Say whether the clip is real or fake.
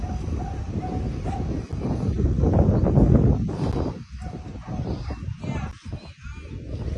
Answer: real